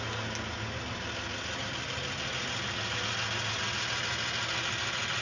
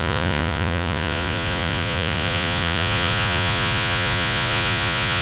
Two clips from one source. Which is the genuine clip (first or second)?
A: first